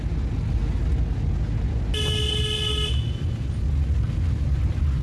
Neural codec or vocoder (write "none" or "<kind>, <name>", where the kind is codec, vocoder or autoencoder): none